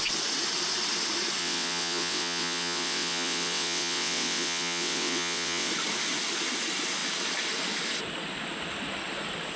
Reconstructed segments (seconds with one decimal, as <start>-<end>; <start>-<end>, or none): 1.4-5.7